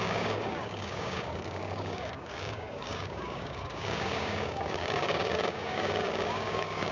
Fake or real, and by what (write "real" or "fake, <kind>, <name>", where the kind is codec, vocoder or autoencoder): fake, codec, DAC